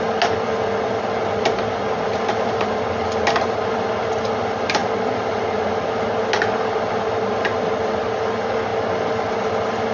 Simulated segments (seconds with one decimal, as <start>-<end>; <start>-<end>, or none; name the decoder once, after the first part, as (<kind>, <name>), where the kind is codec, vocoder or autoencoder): none